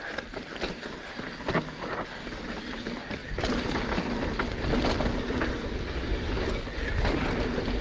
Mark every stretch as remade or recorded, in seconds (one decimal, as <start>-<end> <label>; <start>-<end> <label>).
0.0-7.8 recorded